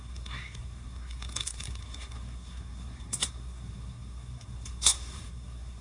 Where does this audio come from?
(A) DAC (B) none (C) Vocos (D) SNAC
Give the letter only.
D